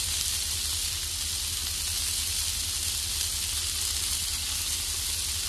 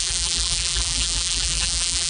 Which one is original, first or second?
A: first